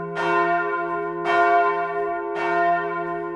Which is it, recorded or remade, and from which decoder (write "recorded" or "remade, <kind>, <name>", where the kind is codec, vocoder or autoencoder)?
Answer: recorded